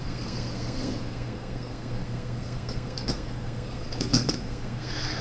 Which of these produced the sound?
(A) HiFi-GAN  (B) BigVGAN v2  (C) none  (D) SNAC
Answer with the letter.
D